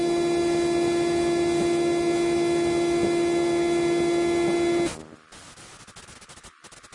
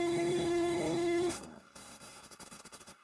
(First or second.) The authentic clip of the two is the first